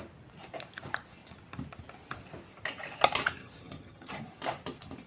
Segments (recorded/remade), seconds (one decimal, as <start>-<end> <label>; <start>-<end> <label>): 0.0-3.4 recorded; 3.4-4.2 remade; 4.2-5.1 recorded